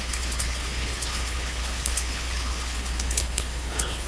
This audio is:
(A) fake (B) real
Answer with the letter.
A